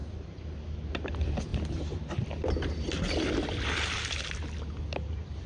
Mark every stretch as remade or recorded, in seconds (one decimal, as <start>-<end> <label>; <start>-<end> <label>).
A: 0.0-5.5 recorded